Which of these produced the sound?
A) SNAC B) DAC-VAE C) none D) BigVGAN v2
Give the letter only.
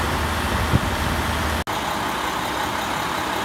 C